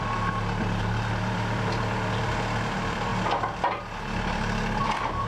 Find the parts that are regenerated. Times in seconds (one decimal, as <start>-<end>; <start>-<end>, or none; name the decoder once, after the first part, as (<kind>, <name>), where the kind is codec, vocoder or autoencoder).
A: 0.0-3.1 (vocoder, BigVGAN v2); 4.8-5.3